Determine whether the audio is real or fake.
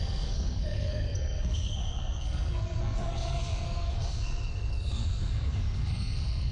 fake